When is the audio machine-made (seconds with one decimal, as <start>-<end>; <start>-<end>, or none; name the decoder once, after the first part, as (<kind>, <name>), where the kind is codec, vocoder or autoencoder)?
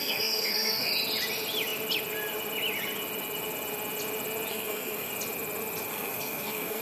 0.0-0.9 (codec, SNAC); 4.5-5.1; 5.9-6.8